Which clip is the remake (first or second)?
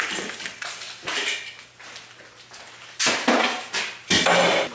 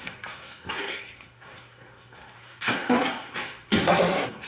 second